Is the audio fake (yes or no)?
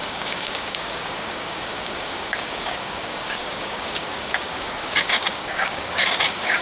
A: yes